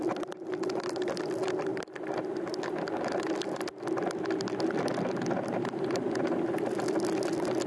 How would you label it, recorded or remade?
recorded